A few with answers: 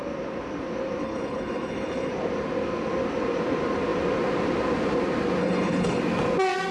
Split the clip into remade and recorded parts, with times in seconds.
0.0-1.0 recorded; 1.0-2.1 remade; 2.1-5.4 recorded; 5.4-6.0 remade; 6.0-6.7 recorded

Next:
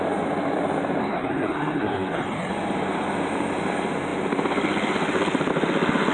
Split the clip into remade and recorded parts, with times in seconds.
0.0-1.0 recorded; 1.0-2.5 remade; 2.5-6.1 recorded

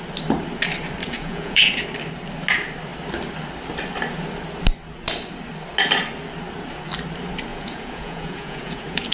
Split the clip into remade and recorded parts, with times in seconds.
0.0-1.0 recorded; 1.0-1.8 remade; 1.8-7.5 recorded; 7.5-9.1 remade

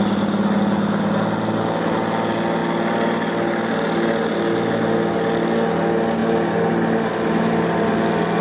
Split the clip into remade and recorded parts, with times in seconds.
0.0-8.4 recorded

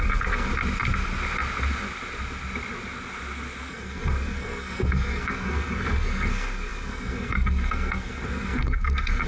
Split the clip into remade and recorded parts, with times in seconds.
0.0-0.5 remade; 0.5-3.7 recorded; 3.7-9.3 remade

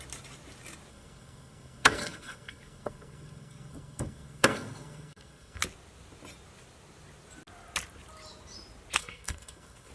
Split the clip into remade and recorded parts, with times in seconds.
0.0-0.9 recorded; 0.9-5.6 remade; 5.6-9.0 recorded; 9.0-9.9 remade

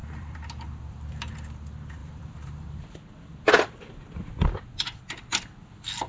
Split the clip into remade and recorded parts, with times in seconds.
0.0-1.3 remade; 1.3-2.0 recorded; 2.0-5.0 remade; 5.0-6.1 recorded